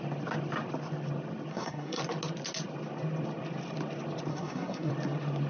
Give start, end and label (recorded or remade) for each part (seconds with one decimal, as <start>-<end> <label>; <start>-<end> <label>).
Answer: 0.0-1.5 recorded; 1.5-2.0 remade; 2.0-4.3 recorded; 4.3-4.9 remade; 4.9-5.5 recorded

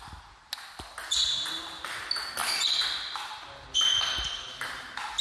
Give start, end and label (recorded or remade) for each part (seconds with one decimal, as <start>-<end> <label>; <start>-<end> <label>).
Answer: 0.0-5.2 recorded

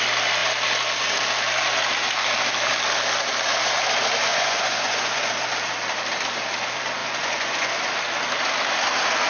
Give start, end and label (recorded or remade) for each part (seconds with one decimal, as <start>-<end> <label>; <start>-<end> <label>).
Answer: 0.0-4.3 recorded; 4.3-5.3 remade; 5.3-7.0 recorded; 7.0-7.7 remade; 7.7-9.3 recorded

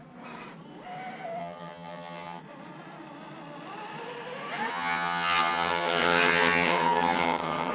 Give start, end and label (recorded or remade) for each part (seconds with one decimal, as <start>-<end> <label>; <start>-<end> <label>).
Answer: 0.0-1.4 recorded; 1.4-2.4 remade; 2.4-4.7 recorded; 4.7-7.7 remade

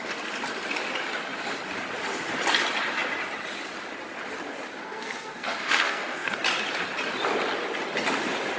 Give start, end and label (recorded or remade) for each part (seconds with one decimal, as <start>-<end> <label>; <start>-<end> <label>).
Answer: 0.0-4.8 recorded; 4.8-6.4 remade; 6.4-8.6 recorded

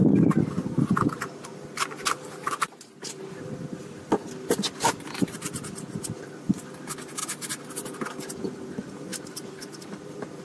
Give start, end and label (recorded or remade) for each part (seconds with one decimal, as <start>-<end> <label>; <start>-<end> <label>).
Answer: 0.0-10.4 recorded

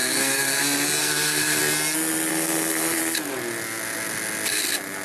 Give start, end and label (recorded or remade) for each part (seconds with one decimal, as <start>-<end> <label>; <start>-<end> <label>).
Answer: 0.0-0.6 remade; 0.6-1.0 recorded; 1.0-1.6 remade; 1.6-2.3 recorded; 2.3-3.0 remade; 3.0-5.0 recorded